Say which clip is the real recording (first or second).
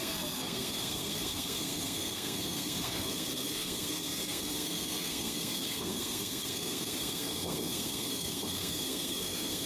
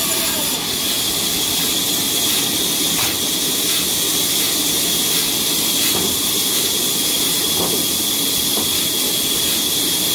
second